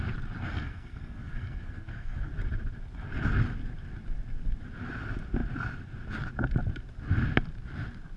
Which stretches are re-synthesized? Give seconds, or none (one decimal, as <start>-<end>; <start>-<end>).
0.4-2.3